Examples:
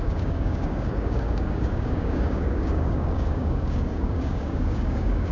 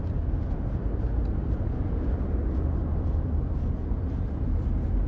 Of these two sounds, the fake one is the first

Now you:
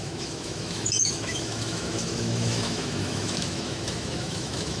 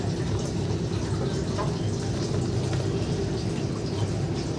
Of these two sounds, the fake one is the first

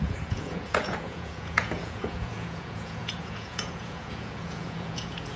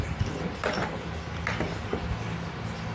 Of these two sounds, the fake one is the first